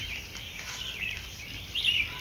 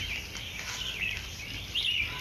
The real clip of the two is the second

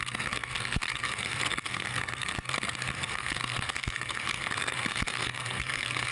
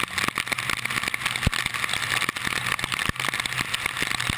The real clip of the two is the second